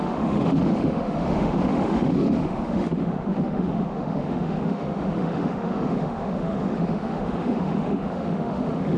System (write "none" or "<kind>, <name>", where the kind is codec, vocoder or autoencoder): autoencoder, DAC-VAE